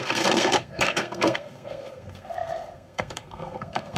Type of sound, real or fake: fake